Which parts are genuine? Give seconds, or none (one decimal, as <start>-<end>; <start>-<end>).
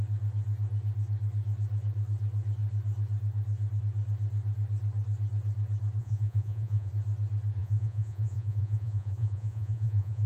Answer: 0.0-6.0; 6.9-7.6